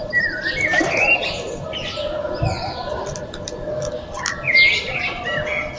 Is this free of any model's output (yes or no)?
yes